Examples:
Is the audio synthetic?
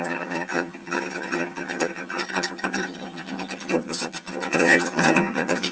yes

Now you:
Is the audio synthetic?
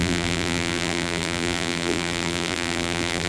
yes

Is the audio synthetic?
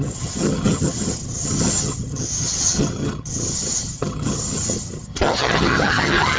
yes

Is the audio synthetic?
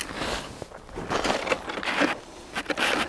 no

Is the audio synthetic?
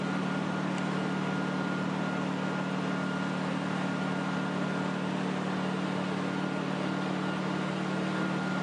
no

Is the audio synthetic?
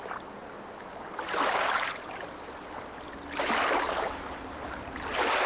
no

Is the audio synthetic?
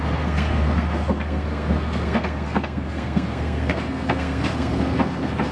yes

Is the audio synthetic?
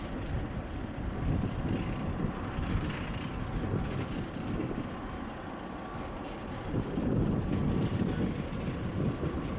no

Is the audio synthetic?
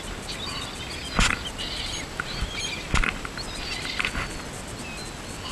no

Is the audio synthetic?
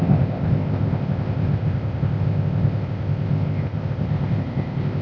yes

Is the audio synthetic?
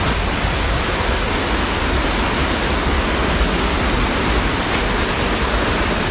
no